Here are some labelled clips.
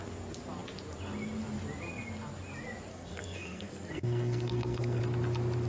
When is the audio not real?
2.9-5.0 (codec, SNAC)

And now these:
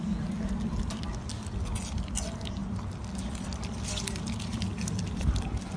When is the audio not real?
none

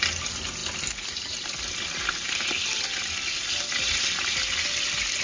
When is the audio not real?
none

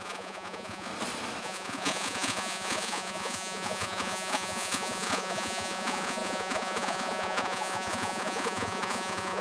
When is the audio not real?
0.0-0.9 (vocoder, Vocos); 1.4-9.4

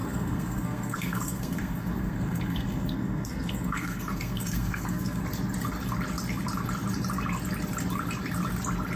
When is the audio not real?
0.0-5.2 (codec, SNAC)